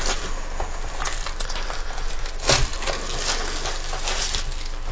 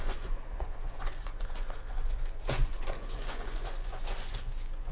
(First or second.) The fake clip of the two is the second